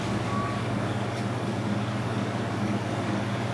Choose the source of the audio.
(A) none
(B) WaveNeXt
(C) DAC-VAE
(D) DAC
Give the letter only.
D